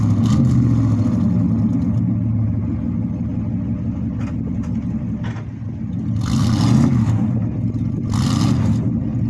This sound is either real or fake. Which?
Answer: real